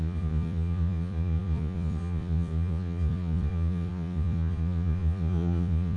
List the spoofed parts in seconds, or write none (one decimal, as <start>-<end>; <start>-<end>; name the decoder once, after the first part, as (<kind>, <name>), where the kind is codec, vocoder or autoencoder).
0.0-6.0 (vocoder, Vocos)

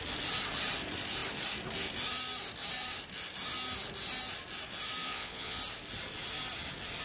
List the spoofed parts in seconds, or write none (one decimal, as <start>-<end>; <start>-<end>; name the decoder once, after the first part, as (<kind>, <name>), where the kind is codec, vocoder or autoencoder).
5.0-5.6 (vocoder, Vocos)

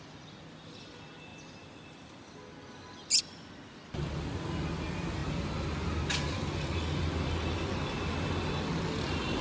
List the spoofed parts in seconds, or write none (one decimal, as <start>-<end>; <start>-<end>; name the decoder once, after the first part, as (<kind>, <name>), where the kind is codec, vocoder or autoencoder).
none